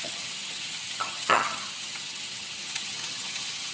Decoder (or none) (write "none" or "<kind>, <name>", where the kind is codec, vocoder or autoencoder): vocoder, HiFi-GAN